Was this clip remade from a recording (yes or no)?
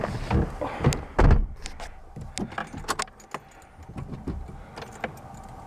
no